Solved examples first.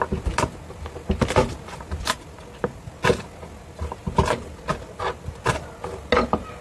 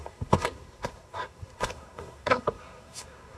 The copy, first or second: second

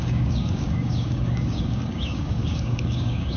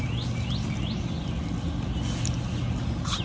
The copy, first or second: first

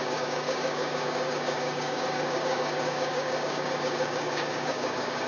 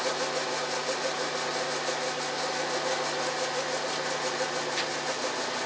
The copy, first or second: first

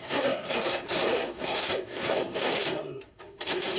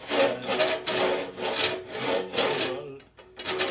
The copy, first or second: first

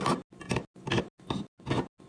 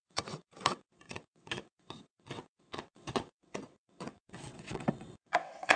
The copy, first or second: second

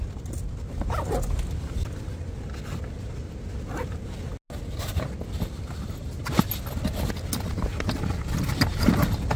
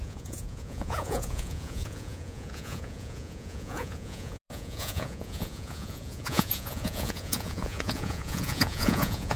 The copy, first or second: second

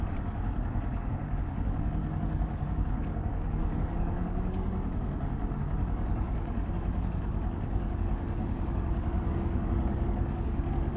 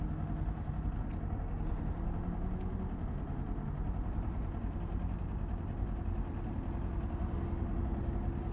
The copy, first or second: first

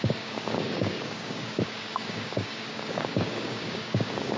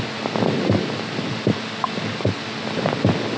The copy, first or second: first